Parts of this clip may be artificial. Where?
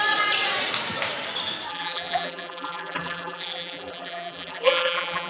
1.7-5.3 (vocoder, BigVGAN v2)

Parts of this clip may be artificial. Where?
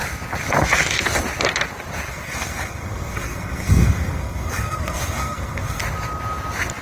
2.1-5.8 (codec, SNAC)